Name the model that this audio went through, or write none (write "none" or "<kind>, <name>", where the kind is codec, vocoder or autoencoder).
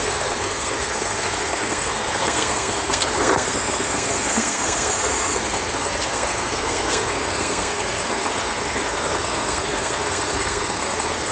codec, SNAC